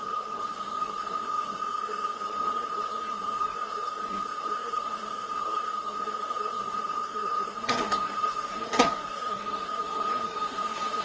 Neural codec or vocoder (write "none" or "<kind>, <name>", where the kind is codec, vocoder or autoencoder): codec, SNAC